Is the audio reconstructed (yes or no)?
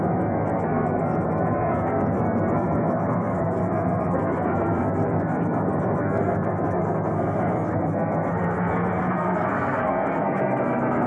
yes